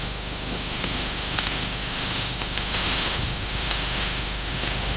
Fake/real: fake